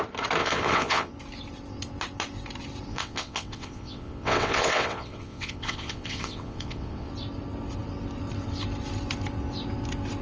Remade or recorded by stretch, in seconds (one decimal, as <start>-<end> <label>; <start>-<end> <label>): 0.0-0.4 recorded; 0.4-1.1 remade; 1.1-2.9 recorded; 2.9-7.1 remade; 7.1-10.2 recorded